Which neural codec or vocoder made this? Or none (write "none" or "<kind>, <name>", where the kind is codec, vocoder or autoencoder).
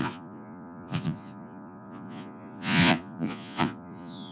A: vocoder, Vocos